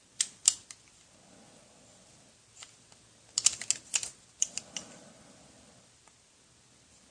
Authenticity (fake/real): real